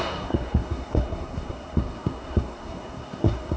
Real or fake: fake